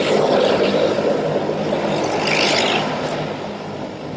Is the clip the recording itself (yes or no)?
yes